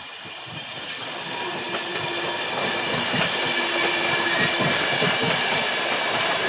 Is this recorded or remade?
recorded